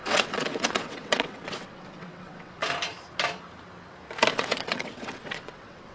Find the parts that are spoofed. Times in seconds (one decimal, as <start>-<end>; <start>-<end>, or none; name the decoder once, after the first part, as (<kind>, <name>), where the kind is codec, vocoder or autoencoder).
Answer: 0.0-2.6 (vocoder, WaveNeXt); 4.3-5.9